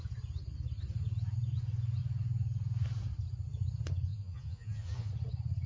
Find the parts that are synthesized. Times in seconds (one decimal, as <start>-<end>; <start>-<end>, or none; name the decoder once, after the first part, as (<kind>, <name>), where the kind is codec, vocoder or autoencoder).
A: 4.1-5.1 (vocoder, Vocos)